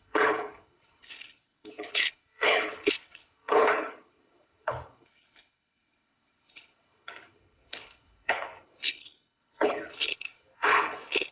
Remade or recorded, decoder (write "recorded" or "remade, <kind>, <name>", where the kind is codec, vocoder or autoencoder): remade, codec, HILCodec